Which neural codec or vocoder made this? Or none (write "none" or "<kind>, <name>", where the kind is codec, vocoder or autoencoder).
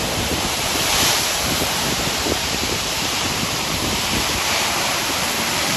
vocoder, BigVGAN v2